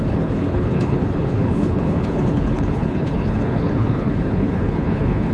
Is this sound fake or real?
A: fake